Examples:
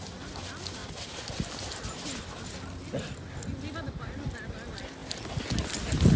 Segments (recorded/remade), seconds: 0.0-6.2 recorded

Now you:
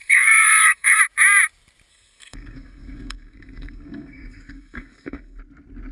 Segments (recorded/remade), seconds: 0.0-1.0 remade; 1.0-1.9 recorded; 1.9-5.4 remade; 5.4-5.9 recorded

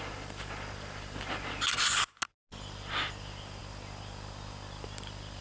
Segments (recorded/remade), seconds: 0.0-5.4 recorded

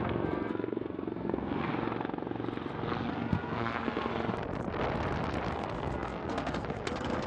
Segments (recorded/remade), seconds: 0.0-1.7 remade; 1.7-3.1 recorded; 3.1-4.1 remade; 4.1-5.5 recorded; 5.5-7.3 remade

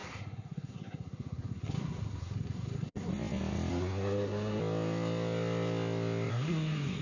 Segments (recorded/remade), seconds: 0.0-3.1 remade; 3.1-3.7 recorded; 3.7-4.6 remade; 4.6-6.3 recorded; 6.3-7.0 remade

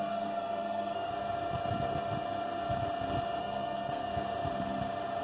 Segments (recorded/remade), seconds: 0.0-1.1 remade; 1.1-3.4 recorded; 3.4-4.1 remade; 4.1-5.2 recorded